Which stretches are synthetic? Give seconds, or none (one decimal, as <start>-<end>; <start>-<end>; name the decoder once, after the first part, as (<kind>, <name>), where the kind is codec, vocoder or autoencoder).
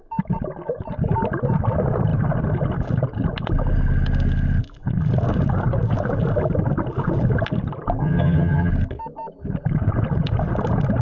8.0-8.7 (vocoder, HiFi-GAN)